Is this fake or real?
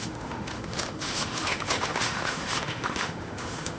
fake